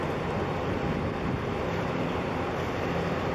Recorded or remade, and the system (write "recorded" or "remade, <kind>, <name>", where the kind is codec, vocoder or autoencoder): recorded